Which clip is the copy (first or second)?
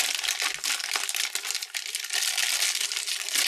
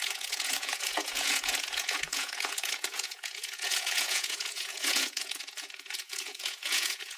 second